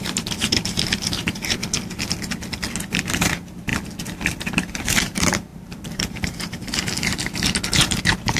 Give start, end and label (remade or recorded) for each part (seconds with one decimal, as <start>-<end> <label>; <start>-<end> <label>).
0.0-1.6 remade; 1.6-2.8 recorded; 2.8-3.7 remade; 3.7-4.3 recorded; 4.3-8.4 remade